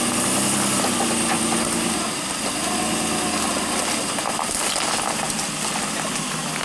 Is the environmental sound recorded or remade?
recorded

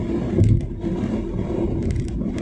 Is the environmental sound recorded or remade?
recorded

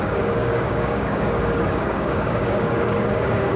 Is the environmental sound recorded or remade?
remade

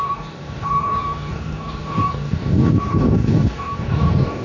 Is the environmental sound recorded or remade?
remade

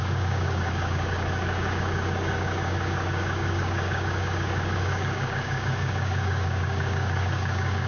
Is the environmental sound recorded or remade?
remade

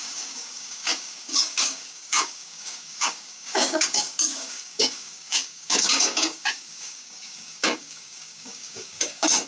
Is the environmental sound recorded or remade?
remade